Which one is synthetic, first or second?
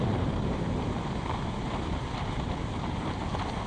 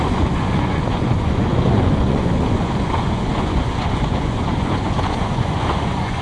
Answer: second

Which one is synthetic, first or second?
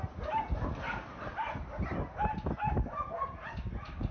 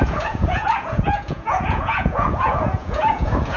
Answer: second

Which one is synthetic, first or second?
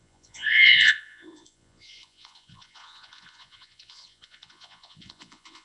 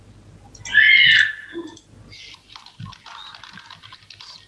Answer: first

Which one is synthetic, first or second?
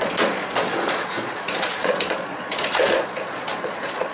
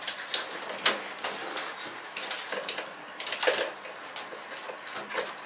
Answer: first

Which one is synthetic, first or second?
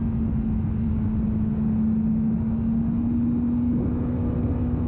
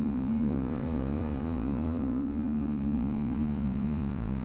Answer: second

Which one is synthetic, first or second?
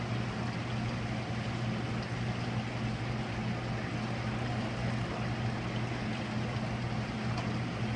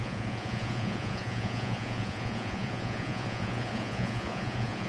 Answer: second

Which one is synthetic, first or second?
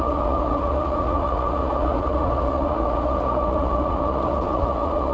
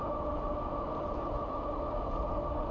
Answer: first